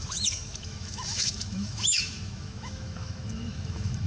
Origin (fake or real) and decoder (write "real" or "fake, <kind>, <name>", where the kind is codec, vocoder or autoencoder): fake, autoencoder, DAC-VAE